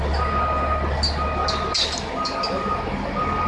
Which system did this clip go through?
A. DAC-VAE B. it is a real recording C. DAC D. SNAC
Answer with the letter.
B